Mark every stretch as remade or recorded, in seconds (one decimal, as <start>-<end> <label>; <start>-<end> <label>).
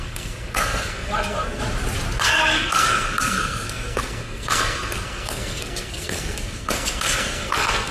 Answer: 0.0-1.6 remade; 1.6-2.2 recorded; 2.2-7.9 remade